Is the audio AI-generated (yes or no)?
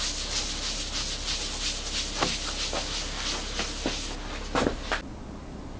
no